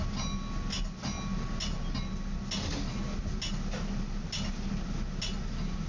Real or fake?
real